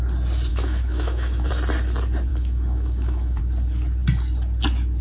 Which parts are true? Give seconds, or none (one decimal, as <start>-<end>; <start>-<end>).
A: 0.0-0.5; 1.5-2.3; 3.4-5.0